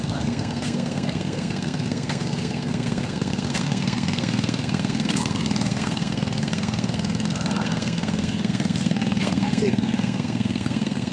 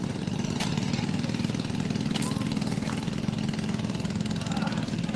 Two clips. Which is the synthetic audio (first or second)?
first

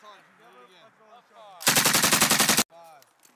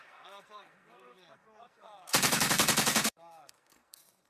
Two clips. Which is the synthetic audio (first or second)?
second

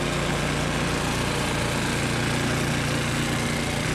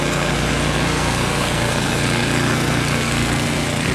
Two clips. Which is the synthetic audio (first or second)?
second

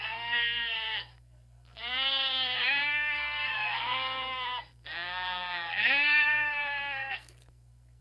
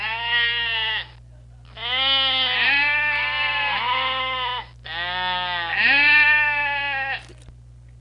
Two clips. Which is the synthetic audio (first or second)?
first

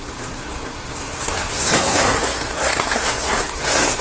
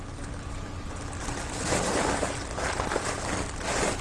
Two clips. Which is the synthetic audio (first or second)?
first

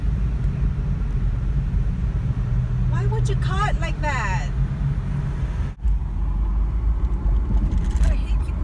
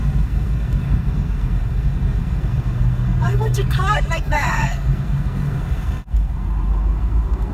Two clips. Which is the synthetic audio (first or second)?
second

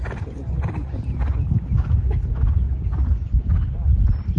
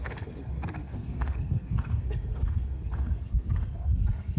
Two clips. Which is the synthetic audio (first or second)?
second